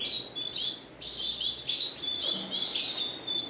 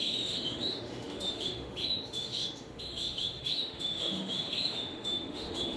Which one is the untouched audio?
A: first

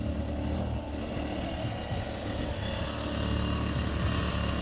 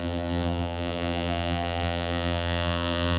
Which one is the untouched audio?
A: first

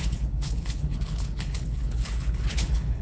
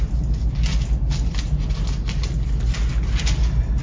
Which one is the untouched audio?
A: second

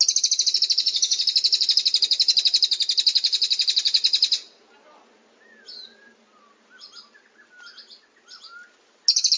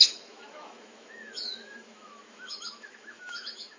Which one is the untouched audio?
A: first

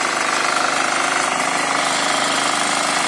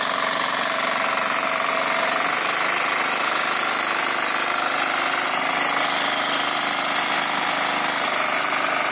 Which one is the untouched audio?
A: second